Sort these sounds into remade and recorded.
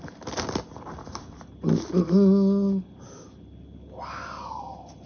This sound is recorded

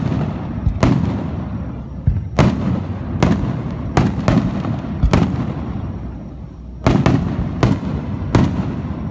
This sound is recorded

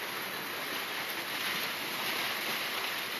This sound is recorded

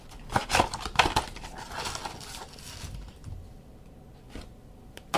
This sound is recorded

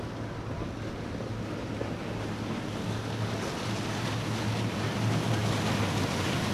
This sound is recorded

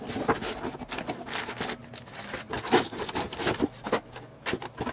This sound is recorded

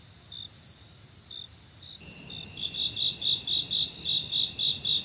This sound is recorded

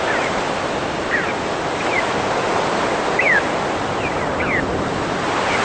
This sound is recorded